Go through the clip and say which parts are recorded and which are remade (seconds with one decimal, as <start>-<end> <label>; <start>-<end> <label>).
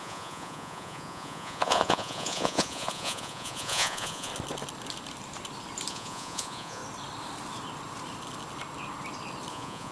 0.0-4.3 remade; 4.3-5.9 recorded; 5.9-6.8 remade; 6.8-9.5 recorded; 9.5-9.9 remade